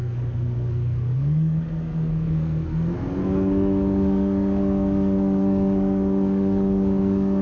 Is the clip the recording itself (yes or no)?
no